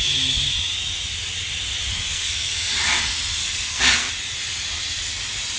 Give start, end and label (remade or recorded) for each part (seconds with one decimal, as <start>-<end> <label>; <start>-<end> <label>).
0.0-2.1 recorded; 2.1-2.7 remade; 2.7-3.4 recorded; 3.4-4.1 remade; 4.1-5.6 recorded